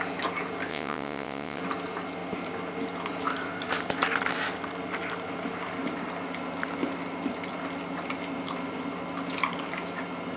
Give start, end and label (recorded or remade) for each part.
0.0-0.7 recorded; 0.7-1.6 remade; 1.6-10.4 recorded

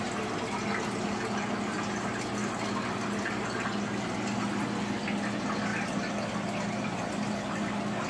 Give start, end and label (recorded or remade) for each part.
0.0-8.1 recorded

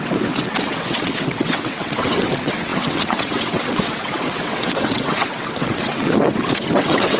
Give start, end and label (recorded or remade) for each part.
0.0-7.2 remade

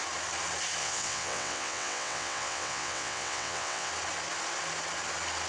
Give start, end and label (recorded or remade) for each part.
0.0-0.8 recorded; 0.8-3.9 remade; 3.9-5.5 recorded

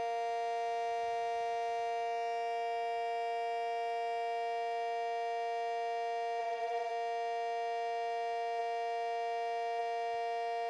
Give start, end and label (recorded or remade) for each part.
0.0-6.4 recorded; 6.4-6.9 remade; 6.9-10.7 recorded